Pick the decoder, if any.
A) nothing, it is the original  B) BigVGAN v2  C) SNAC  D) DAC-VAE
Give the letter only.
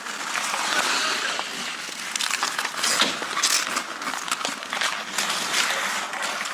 A